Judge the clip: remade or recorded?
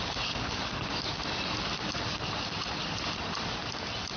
recorded